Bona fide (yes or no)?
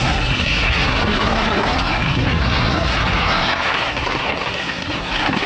no